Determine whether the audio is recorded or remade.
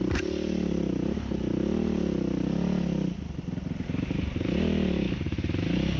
recorded